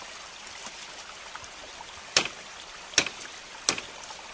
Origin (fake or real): real